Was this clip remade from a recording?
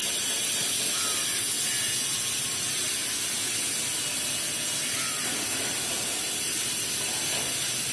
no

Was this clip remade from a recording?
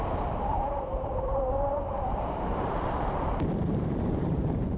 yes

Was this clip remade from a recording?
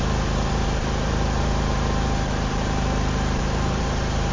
yes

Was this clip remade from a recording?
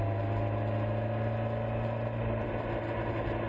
no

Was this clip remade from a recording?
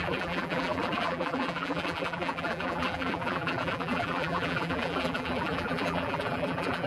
yes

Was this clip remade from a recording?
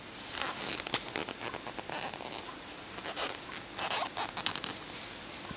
no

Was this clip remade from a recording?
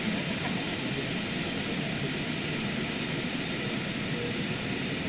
no